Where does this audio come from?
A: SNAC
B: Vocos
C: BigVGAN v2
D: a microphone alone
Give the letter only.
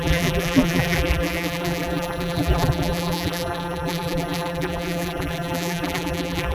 C